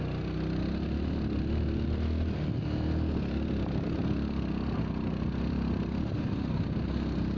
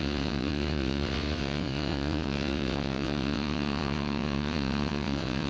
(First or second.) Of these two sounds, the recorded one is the first